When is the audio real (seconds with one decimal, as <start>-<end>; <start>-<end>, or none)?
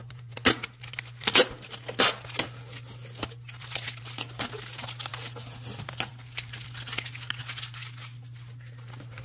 0.0-9.2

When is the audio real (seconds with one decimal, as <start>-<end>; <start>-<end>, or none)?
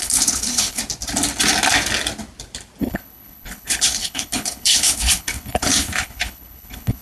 0.8-2.8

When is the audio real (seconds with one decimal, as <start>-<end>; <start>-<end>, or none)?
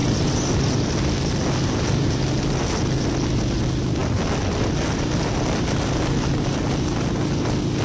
0.0-7.8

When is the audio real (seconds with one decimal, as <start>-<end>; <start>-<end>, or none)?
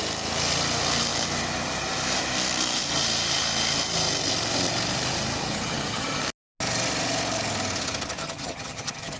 0.0-5.4; 6.2-8.2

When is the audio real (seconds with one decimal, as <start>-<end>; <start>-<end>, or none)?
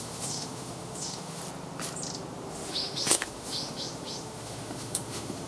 1.4-2.5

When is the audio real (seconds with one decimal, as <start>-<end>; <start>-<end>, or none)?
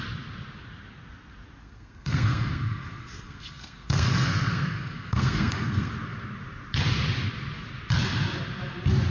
0.0-1.6; 5.9-9.1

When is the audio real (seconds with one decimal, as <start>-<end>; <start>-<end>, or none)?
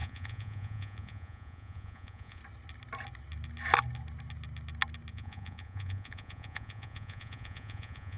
2.4-5.1